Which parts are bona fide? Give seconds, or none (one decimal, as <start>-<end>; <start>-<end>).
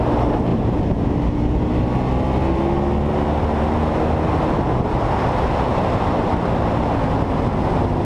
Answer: 0.0-0.5; 1.1-8.0